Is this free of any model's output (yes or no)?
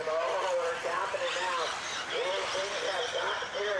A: yes